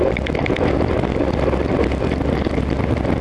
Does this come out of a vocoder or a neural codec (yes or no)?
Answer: no